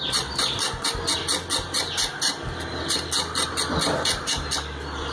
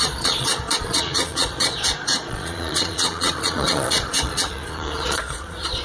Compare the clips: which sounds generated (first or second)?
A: second